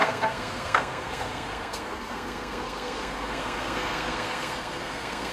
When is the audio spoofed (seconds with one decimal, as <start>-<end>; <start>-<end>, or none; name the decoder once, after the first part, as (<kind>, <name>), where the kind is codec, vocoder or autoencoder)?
0.0-5.3 (codec, SNAC)